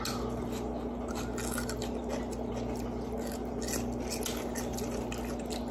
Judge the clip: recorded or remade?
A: recorded